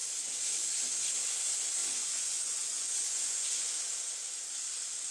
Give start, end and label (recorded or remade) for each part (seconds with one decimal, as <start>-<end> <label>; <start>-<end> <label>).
0.0-1.8 recorded; 1.8-3.9 remade; 3.9-5.1 recorded